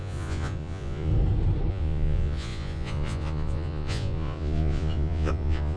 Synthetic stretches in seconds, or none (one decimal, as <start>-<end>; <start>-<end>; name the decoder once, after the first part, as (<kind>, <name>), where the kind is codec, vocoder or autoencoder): 0.0-1.1 (vocoder, Vocos); 1.7-5.8